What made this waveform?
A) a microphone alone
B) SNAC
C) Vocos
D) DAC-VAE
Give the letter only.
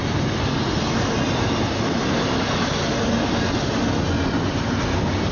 A